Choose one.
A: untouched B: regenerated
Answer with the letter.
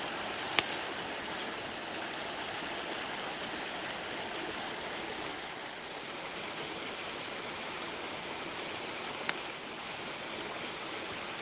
A